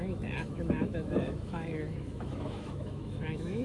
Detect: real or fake fake